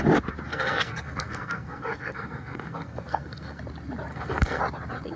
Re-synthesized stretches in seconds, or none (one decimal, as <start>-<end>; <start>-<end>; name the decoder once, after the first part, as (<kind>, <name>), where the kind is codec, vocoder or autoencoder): 0.5-3.6 (codec, SNAC); 4.1-4.6